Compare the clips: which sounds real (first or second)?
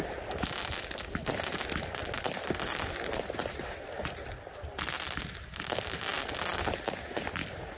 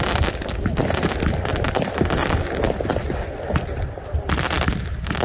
first